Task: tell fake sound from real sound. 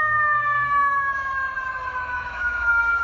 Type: fake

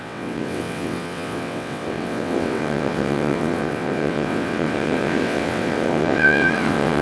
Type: fake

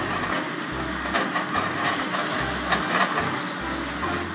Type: real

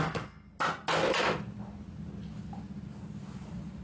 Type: real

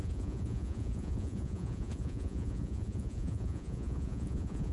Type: fake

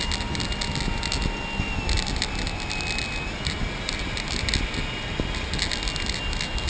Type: real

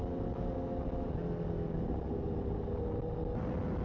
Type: real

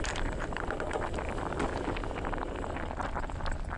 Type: fake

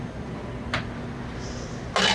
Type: real